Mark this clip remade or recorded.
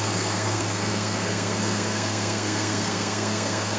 remade